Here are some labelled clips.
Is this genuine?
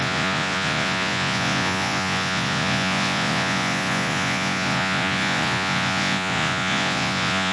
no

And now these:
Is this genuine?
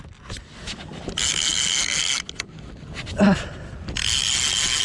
yes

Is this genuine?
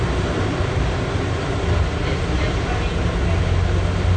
yes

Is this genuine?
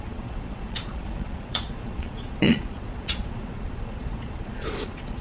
no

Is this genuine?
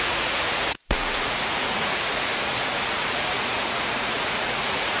no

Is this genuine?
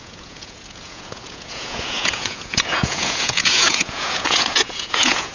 no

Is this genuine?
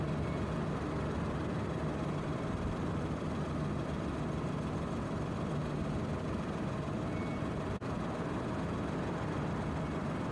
yes